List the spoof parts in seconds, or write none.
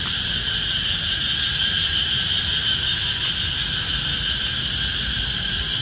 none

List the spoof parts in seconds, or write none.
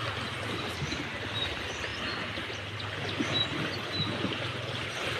0.0-1.9 (vocoder, BigVGAN v2)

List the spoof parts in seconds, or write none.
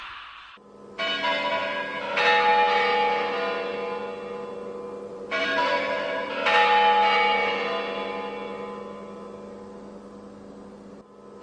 5.1-6.3 (vocoder, BigVGAN v2)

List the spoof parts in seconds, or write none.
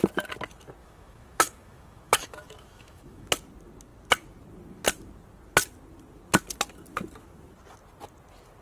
0.8-3.3 (autoencoder, DAC-VAE)